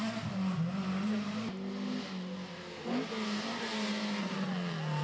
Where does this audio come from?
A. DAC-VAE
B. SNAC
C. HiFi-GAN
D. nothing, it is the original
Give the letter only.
D